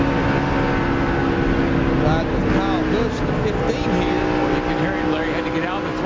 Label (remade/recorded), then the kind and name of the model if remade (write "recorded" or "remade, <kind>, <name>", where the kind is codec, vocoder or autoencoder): recorded